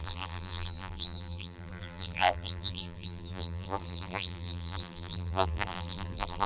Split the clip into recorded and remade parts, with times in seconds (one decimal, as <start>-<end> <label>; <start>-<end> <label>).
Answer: 0.0-6.5 remade